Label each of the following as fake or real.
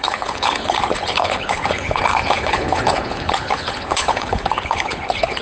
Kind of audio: fake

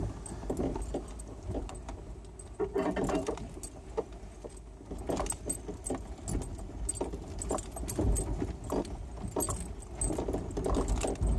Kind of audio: real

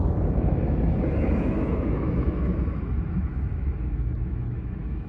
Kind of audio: fake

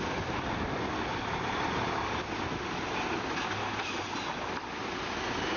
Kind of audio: real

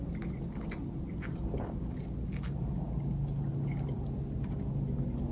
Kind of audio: real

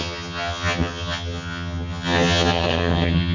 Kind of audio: fake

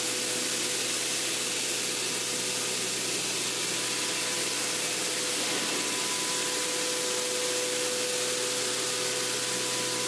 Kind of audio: real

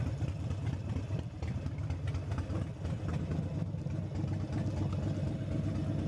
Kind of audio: real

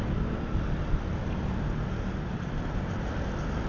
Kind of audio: real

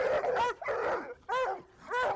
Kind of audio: real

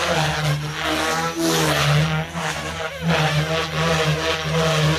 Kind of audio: real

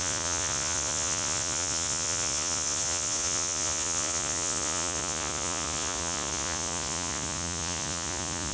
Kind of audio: fake